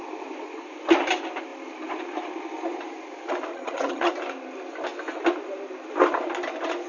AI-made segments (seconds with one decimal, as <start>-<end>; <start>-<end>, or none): 3.5-4.1